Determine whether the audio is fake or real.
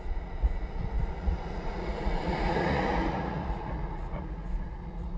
fake